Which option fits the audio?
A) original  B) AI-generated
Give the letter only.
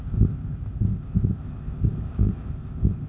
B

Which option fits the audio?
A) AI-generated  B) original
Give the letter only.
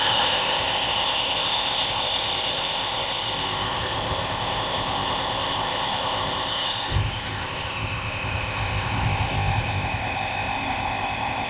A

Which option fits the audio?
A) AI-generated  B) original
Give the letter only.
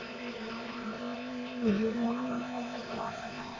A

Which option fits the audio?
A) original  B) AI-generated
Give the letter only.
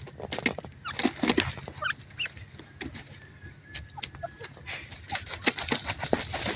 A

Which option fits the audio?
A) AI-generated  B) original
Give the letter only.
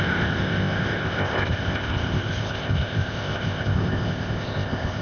A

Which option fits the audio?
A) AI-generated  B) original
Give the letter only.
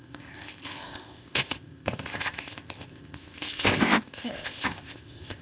A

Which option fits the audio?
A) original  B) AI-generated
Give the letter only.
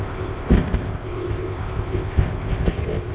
B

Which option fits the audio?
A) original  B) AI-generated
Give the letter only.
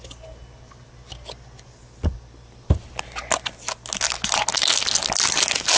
A